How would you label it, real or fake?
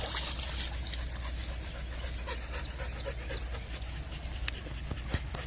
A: real